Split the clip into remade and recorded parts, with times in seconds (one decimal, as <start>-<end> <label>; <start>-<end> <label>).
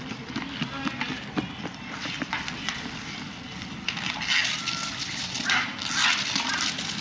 0.0-7.0 recorded